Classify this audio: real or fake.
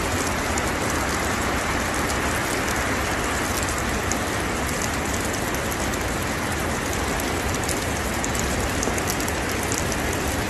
real